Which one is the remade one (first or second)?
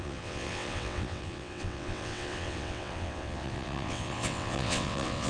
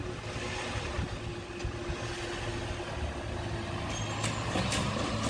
first